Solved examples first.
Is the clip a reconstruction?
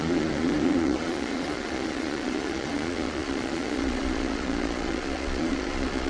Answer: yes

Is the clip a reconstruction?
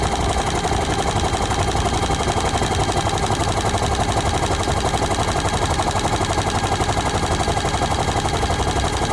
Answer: no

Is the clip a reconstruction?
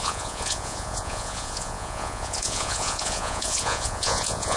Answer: yes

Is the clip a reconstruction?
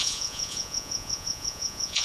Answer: yes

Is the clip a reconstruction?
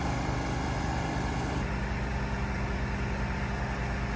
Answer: no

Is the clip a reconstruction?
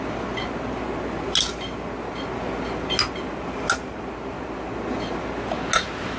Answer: no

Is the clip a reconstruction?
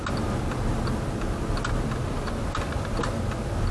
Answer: no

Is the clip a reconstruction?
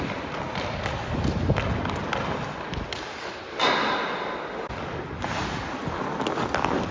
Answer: no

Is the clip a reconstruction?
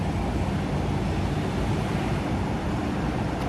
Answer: no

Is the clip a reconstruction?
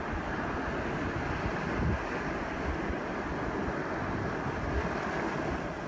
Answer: no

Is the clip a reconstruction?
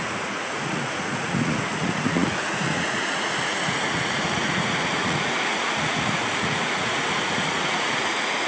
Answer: yes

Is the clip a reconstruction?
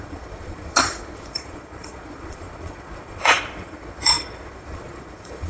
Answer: yes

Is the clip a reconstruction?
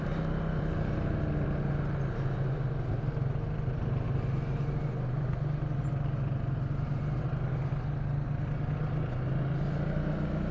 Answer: no